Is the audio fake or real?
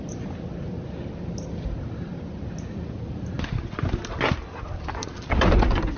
real